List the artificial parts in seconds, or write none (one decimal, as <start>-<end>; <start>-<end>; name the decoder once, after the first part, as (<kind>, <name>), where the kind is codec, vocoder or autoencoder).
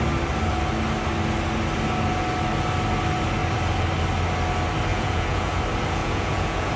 4.9-5.6 (vocoder, Vocos); 6.0-6.8